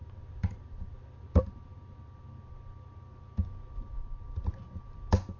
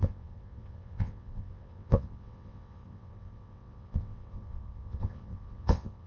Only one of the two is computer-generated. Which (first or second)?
second